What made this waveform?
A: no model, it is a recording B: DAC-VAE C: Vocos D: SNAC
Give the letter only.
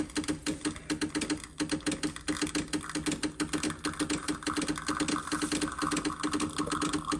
A